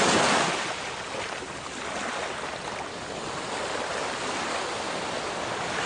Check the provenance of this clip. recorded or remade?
recorded